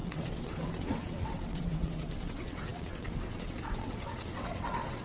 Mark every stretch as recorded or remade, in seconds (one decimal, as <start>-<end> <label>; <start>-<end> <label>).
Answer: 0.0-5.0 remade